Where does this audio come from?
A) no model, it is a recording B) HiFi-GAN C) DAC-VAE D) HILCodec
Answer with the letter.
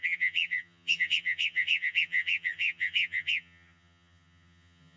B